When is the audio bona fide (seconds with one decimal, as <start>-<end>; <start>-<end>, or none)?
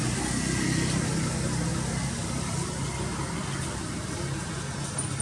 0.0-5.2